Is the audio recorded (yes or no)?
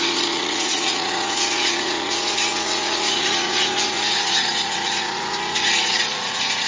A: no